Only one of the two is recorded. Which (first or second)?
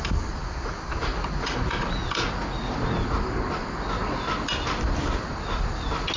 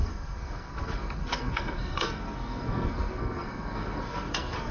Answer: first